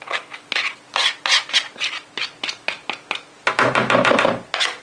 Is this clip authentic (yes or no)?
yes